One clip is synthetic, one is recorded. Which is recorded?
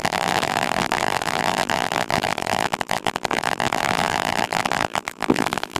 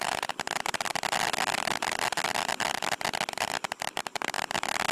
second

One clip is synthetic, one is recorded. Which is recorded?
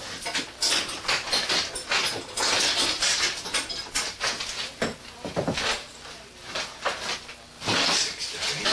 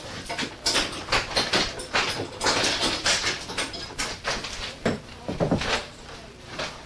first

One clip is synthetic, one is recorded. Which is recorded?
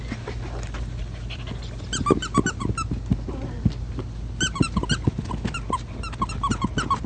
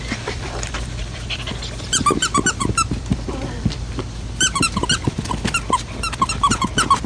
first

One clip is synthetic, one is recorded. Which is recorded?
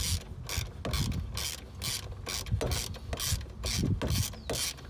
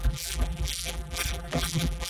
first